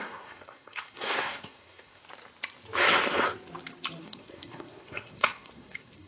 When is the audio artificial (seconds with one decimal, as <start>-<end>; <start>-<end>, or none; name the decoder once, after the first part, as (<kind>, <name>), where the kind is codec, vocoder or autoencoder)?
0.0-2.0 (codec, SNAC); 4.0-6.1